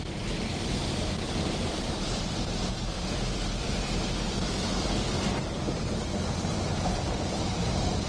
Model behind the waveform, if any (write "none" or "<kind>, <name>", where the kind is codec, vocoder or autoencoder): vocoder, BigVGAN v2